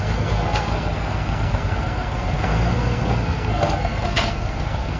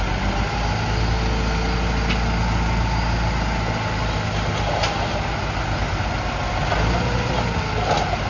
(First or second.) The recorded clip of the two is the second